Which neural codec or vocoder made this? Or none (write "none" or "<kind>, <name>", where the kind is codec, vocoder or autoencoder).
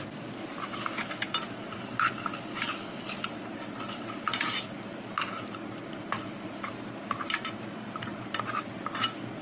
none